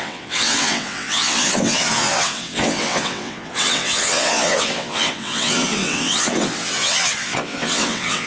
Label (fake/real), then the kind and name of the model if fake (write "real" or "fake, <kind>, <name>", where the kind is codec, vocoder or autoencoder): fake, vocoder, WaveNeXt